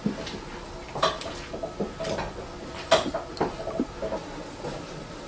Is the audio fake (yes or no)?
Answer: no